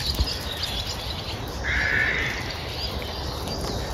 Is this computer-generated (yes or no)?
no